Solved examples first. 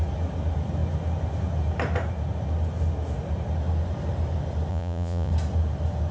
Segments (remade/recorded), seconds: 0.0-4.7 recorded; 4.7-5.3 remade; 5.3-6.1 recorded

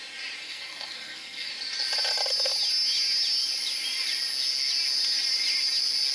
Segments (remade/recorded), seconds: 0.0-0.4 recorded; 0.4-1.5 remade; 1.5-6.1 recorded

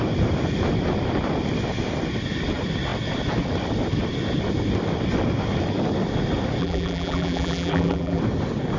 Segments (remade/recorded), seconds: 0.0-6.6 recorded; 6.6-8.2 remade; 8.2-8.8 recorded

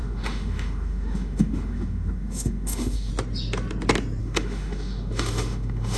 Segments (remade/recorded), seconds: 0.0-3.1 remade; 3.1-4.2 recorded; 4.2-6.0 remade

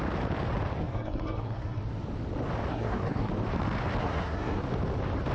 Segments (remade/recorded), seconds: 0.0-0.8 recorded; 0.8-1.8 remade; 1.8-2.7 recorded; 2.7-3.3 remade; 3.3-4.0 recorded; 4.0-4.6 remade; 4.6-5.3 recorded

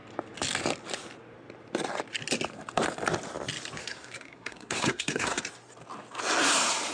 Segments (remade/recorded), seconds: 0.0-3.8 recorded; 3.8-5.4 remade; 5.4-6.9 recorded

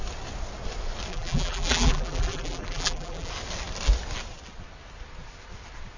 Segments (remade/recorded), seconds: 0.0-1.1 recorded; 1.1-3.3 remade; 3.3-6.0 recorded